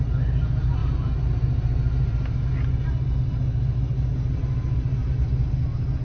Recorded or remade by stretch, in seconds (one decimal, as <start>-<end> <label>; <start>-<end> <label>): 0.0-6.0 recorded